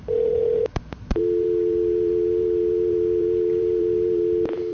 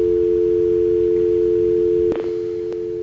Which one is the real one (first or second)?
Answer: second